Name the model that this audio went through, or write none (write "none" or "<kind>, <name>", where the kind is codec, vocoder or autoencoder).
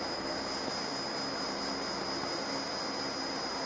none